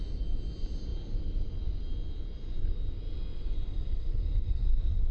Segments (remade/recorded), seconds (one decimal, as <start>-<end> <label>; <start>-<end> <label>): 0.0-3.3 recorded; 3.3-5.1 remade